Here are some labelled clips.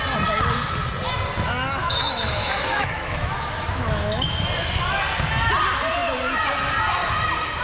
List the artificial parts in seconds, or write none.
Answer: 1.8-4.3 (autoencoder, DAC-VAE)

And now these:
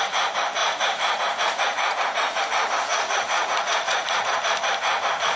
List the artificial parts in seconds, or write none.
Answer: 0.6-2.4 (vocoder, Vocos); 2.9-4.4

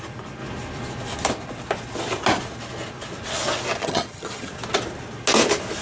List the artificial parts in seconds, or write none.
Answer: 3.8-4.5 (vocoder, HiFi-GAN)

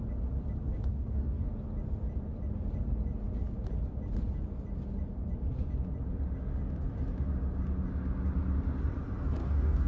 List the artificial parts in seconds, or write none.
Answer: 0.9-1.5 (codec, DAC); 9.4-9.9

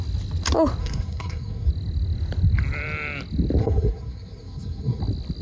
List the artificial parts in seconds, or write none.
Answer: 0.8-1.7 (codec, SNAC); 3.6-5.0

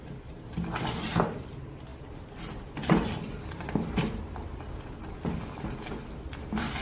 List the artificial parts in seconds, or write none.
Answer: 1.9-3.3 (vocoder, BigVGAN v2)

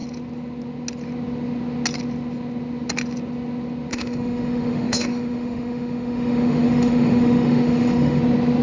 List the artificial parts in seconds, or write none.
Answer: 3.9-8.2 (autoencoder, DAC-VAE)

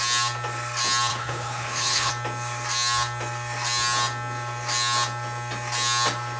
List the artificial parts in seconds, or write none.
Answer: 1.1-2.1 (codec, HILCodec)